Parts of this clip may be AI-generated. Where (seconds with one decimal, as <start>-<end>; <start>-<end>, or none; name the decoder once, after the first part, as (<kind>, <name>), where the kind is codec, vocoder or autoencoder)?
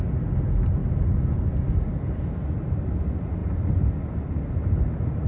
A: none